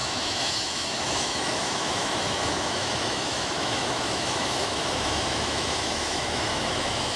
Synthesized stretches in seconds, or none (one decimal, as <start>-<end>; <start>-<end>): 0.0-7.2